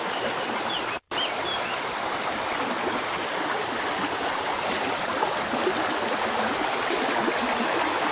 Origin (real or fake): real